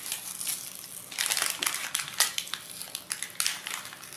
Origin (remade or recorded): recorded